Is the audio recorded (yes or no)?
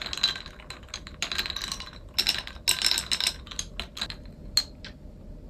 yes